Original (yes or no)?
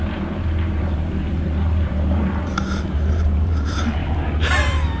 no